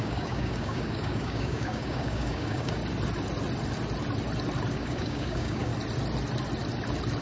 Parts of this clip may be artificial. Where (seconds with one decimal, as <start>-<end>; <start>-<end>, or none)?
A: 0.0-2.8; 4.7-5.7